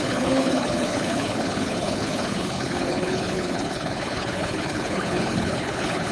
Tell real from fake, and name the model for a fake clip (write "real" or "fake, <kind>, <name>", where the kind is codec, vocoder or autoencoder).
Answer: fake, codec, HILCodec